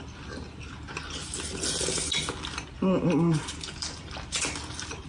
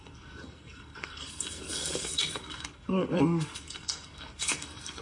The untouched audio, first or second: first